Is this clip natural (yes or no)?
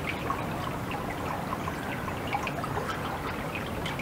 yes